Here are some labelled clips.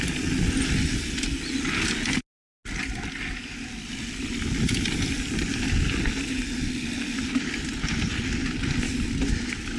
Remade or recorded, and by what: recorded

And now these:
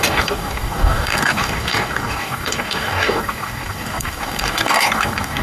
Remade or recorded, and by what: remade, codec, DAC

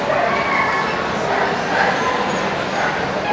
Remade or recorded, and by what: recorded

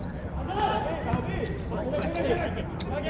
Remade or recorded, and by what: recorded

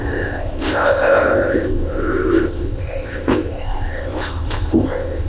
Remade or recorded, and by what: remade, codec, ZipCodec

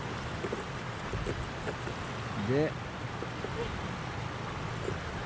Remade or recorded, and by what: recorded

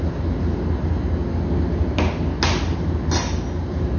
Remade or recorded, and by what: recorded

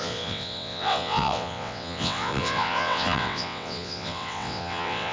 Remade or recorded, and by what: remade, vocoder, WaveNeXt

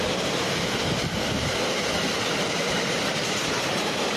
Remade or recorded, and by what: remade, vocoder, BigVGAN v2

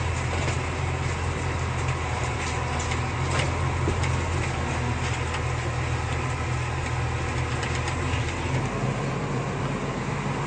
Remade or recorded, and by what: recorded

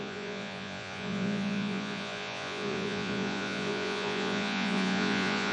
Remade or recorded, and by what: remade, vocoder, Vocos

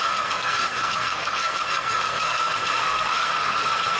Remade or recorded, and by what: remade, codec, SNAC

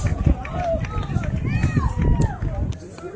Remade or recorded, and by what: recorded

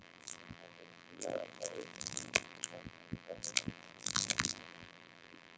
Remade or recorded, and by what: remade, vocoder, BigVGAN v2